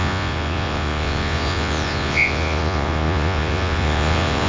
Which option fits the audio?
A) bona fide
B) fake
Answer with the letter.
B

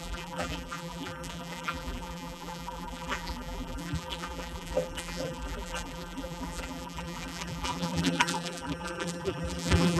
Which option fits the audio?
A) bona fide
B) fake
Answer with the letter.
B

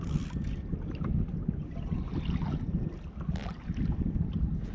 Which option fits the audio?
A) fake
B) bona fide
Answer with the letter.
B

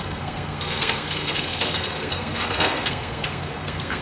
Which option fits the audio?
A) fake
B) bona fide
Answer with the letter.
A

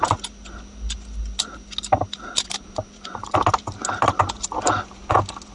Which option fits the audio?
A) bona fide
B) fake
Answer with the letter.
A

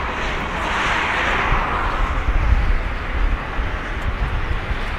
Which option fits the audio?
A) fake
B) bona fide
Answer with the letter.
B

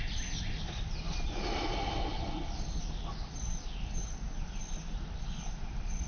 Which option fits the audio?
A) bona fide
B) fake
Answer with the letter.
A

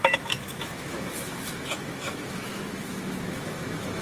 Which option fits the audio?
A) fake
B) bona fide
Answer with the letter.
A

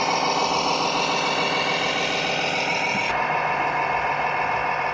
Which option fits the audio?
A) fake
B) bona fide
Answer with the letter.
B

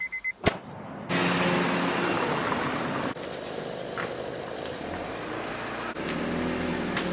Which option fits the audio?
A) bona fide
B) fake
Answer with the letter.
A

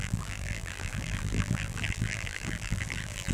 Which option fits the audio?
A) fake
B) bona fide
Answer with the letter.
A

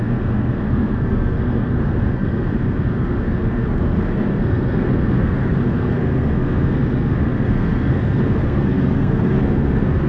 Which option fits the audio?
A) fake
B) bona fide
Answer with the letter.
A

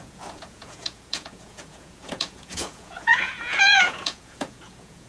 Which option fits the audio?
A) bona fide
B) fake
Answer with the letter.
B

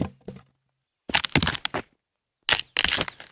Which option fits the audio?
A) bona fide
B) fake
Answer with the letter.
A